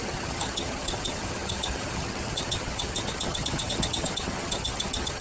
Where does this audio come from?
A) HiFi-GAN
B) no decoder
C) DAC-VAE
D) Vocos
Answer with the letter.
A